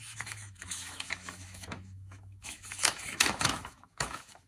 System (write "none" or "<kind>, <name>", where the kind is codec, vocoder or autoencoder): autoencoder, DAC-VAE